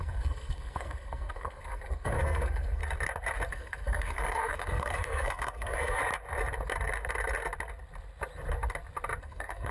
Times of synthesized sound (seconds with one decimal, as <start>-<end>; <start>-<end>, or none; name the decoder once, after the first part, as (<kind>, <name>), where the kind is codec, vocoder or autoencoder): 0.0-2.8 (codec, SNAC); 3.5-6.0; 9.2-9.7